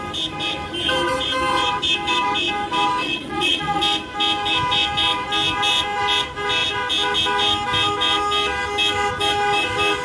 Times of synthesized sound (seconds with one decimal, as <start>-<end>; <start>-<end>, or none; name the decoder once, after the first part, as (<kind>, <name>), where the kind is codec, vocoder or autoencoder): 3.0-3.8 (vocoder, Vocos)